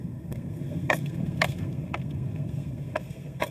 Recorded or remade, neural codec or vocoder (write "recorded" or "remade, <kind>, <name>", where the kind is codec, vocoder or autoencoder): remade, codec, SNAC